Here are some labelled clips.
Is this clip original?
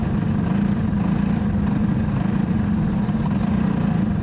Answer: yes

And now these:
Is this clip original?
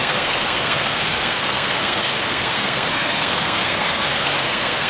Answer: no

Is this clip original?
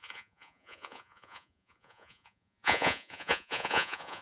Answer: no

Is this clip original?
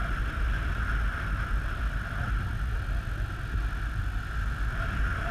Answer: yes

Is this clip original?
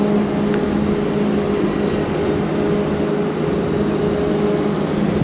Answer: yes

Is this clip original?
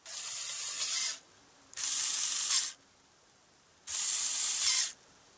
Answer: yes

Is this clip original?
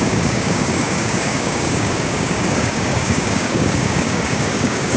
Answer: no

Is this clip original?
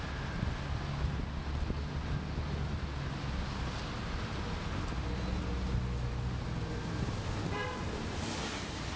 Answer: yes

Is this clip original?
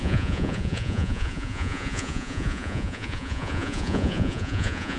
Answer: no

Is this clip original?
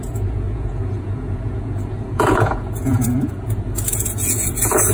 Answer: no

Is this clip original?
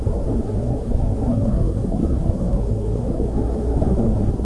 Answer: no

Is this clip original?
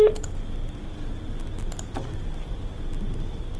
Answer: yes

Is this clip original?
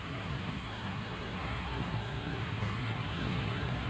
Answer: no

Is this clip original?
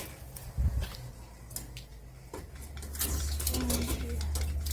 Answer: yes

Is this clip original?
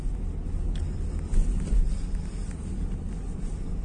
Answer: yes